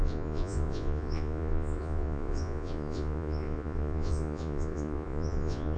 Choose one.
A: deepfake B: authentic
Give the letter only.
A